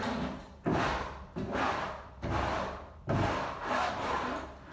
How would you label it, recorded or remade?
recorded